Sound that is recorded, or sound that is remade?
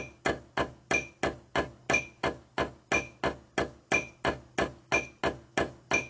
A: recorded